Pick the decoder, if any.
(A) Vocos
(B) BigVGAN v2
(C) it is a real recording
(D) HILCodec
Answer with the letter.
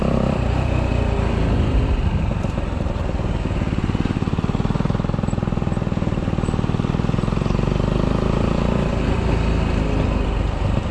B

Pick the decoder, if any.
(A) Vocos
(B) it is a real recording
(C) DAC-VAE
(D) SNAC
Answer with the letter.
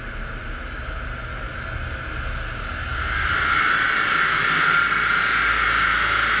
B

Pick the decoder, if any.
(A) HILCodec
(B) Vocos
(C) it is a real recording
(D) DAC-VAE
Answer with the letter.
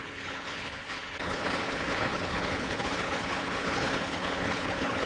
A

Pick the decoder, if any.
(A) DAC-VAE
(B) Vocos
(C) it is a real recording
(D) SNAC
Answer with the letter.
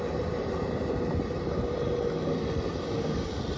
C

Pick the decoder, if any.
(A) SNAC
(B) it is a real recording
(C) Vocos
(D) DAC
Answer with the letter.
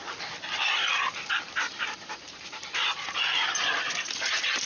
B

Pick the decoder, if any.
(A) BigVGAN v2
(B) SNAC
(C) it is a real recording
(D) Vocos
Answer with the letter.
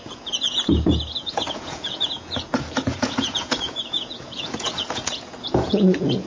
D